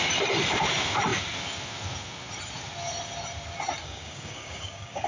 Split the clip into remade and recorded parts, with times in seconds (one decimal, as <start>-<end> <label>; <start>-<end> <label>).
0.0-3.8 recorded; 3.8-5.1 remade